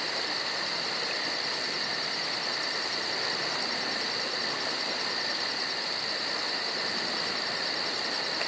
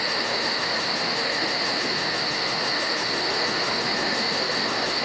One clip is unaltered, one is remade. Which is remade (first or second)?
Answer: second